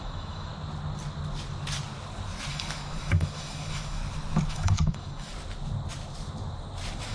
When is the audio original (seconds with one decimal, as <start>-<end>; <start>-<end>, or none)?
0.5-2.5; 4.0-4.5; 5.3-7.1

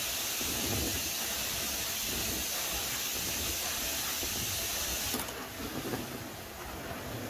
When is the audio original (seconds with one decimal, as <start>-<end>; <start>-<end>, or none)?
0.0-7.3